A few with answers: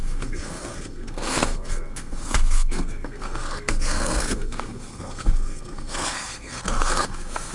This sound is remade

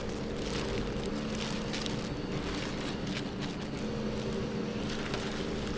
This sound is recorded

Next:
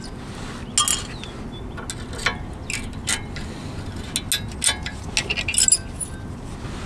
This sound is recorded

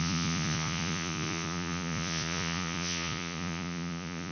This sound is remade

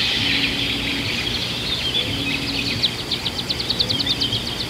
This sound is recorded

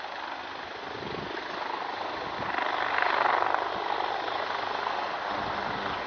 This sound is recorded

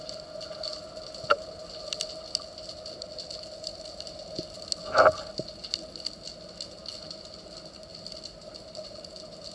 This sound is recorded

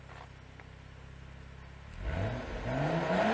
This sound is recorded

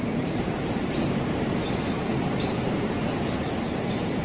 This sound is remade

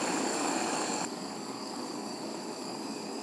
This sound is remade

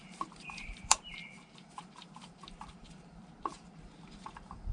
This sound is remade